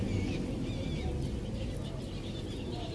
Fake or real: real